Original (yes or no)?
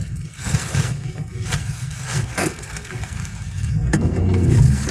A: no